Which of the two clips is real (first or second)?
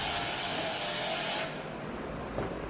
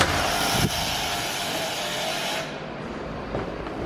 first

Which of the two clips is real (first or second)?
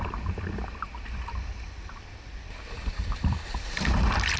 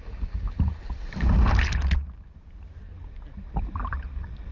second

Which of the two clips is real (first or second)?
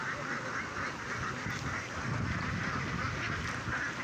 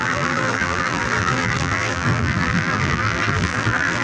first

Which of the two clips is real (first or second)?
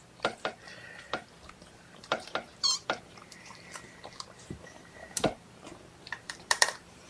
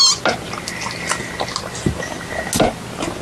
second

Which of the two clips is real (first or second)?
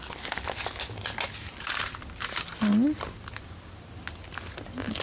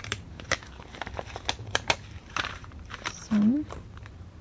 first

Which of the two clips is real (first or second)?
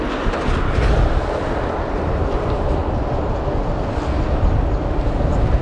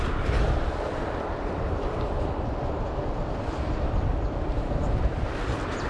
first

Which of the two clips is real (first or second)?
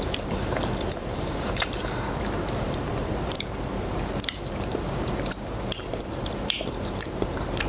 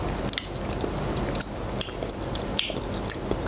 second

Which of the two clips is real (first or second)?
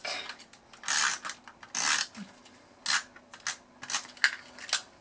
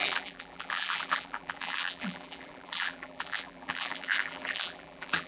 first